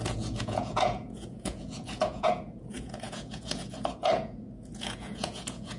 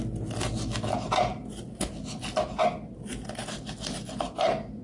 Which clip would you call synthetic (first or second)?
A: first